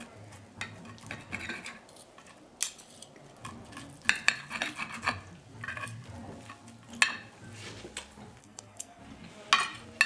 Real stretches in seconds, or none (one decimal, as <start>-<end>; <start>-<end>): 0.0-8.4; 9.0-10.1